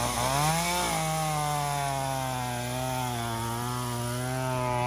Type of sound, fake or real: real